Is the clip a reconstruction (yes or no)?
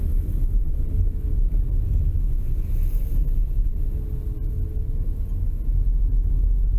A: no